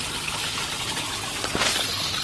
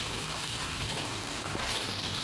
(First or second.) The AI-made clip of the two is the second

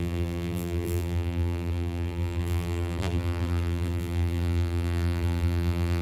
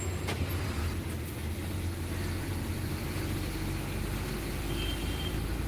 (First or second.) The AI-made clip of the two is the first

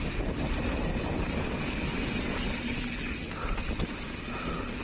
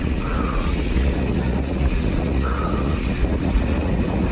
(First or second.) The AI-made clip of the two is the second